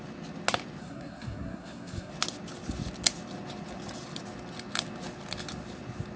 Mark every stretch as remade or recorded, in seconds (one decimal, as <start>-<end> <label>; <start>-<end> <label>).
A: 0.0-0.8 recorded; 0.8-2.1 remade; 2.1-6.2 recorded

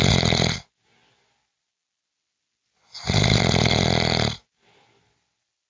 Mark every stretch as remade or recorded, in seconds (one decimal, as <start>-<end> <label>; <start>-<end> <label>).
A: 0.0-5.7 recorded

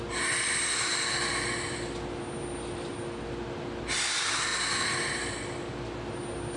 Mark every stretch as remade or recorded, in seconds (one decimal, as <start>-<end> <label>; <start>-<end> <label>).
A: 0.0-6.6 recorded

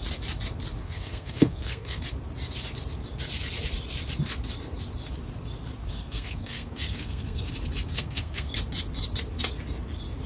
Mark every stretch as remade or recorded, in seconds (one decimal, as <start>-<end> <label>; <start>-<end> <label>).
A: 0.0-0.8 recorded; 0.8-2.0 remade; 2.0-5.8 recorded; 5.8-7.5 remade; 7.5-7.9 recorded; 7.9-8.5 remade; 8.5-10.3 recorded

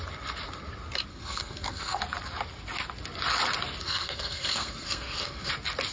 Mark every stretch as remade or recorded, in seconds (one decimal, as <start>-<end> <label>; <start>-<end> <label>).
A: 0.0-1.1 recorded; 1.1-2.0 remade; 2.0-3.8 recorded; 3.8-5.5 remade; 5.5-5.9 recorded

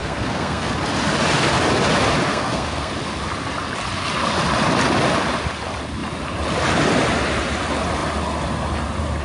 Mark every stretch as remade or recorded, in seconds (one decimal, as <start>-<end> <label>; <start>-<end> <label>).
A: 0.0-0.7 remade; 0.7-2.3 recorded; 2.3-2.9 remade; 2.9-9.2 recorded